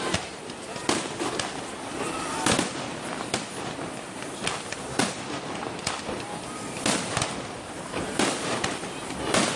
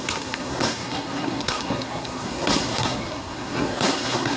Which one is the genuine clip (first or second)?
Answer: first